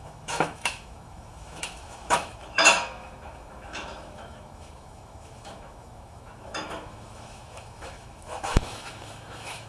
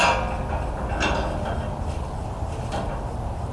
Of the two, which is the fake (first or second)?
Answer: first